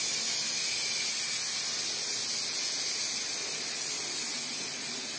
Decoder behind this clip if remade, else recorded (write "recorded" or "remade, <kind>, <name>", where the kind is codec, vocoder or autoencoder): recorded